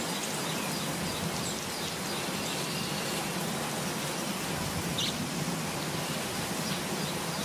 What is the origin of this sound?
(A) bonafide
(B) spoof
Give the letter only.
A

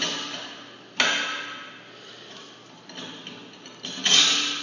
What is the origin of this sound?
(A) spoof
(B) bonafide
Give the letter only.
B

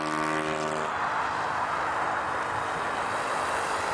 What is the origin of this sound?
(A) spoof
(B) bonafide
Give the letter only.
B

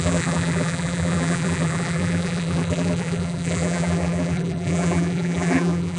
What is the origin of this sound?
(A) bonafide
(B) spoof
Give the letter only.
B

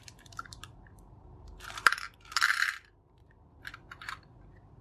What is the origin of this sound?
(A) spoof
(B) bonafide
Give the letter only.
A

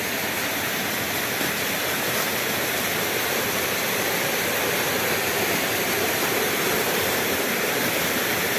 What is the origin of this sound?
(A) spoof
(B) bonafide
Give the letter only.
A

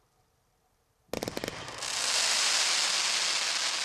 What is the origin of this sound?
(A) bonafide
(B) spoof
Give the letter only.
A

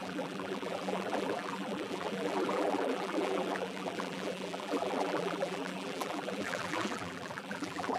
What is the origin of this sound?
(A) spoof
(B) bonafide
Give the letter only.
A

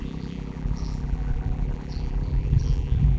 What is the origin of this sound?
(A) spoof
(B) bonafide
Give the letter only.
A